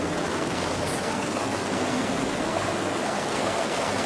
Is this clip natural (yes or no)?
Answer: no